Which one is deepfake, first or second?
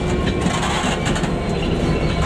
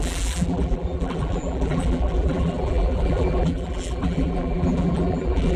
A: second